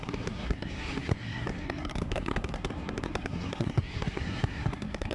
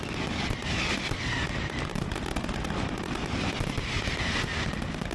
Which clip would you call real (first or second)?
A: second